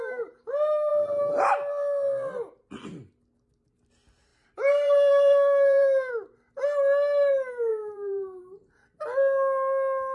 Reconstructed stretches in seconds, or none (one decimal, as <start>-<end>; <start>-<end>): 4.3-6.1; 7.7-8.4